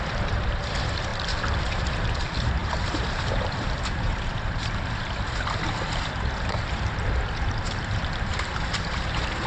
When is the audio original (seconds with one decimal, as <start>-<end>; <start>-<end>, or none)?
1.1-1.6